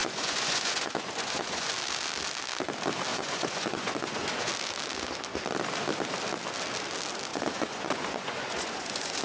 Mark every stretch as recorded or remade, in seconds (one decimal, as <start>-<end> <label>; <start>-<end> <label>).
0.0-1.7 remade; 1.7-3.1 recorded; 3.1-4.5 remade; 4.5-7.3 recorded; 7.3-9.2 remade